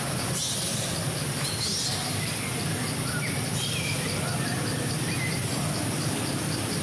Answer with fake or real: real